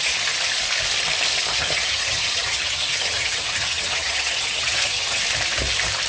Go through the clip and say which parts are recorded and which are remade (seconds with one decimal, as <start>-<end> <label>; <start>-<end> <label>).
0.0-1.5 recorded; 1.5-5.2 remade; 5.2-6.1 recorded